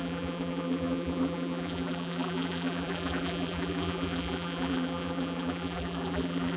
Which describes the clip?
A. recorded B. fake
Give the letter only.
B